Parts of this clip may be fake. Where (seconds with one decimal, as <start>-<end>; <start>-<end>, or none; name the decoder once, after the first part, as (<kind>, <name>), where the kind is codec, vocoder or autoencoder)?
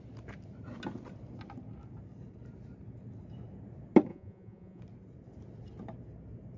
4.1-4.8 (vocoder, Vocos)